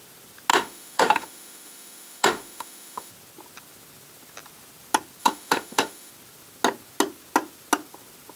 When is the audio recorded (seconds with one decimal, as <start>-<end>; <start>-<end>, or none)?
0.0-0.5; 3.1-5.2; 6.1-8.4